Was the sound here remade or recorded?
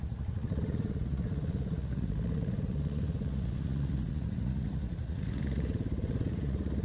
remade